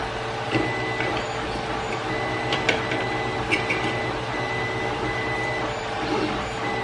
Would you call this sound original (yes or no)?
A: no